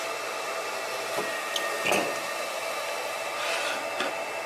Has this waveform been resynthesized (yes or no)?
no